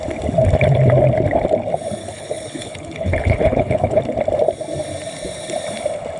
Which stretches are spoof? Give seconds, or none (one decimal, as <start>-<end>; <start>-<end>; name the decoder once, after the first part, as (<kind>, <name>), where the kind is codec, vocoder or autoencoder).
2.0-4.0 (codec, HILCodec)